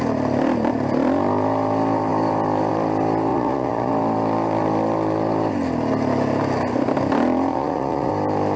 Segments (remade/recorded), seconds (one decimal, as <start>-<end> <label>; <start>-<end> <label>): 0.0-3.3 recorded; 3.3-3.9 remade; 3.9-7.5 recorded; 7.5-8.1 remade; 8.1-8.6 recorded